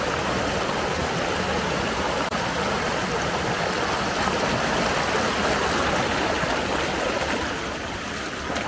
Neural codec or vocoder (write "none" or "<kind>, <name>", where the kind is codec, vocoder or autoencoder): none